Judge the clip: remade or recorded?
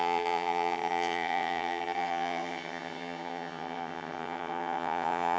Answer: remade